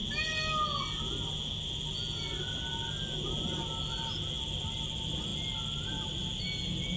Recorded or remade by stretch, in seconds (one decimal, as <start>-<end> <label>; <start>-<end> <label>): 0.0-7.0 recorded